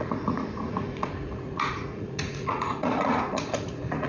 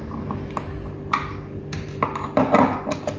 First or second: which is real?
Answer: second